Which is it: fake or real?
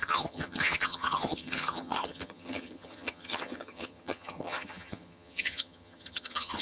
fake